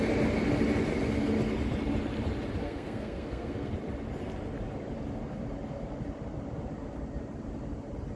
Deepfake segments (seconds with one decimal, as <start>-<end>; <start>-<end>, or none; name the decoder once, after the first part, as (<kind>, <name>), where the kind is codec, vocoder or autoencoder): 2.6-3.7 (codec, SNAC)